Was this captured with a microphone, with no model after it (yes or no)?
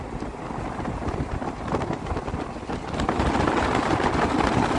yes